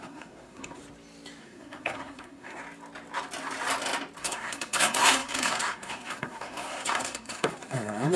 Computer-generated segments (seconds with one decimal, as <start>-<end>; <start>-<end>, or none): 0.0-0.8; 1.4-2.6; 4.2-8.2